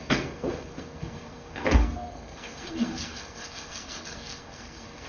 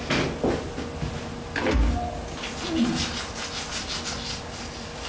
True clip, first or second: second